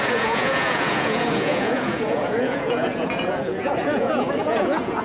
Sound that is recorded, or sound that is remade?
remade